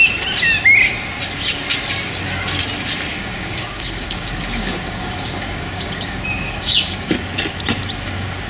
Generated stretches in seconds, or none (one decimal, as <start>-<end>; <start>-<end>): 3.1-7.1